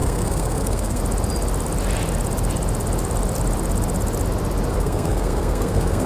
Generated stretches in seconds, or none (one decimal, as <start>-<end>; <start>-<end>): 0.0-1.0; 4.7-6.1